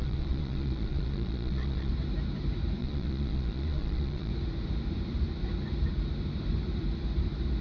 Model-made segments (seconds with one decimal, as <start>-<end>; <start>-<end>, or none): 0.0-1.9; 2.8-4.3